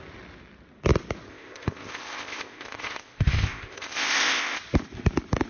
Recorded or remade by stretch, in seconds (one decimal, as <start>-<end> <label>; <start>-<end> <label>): 0.0-1.3 recorded; 1.3-4.6 remade; 4.6-5.5 recorded